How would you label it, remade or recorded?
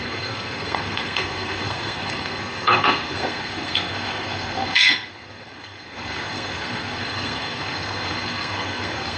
remade